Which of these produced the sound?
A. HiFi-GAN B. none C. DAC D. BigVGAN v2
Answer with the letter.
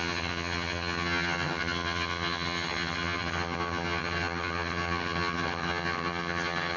A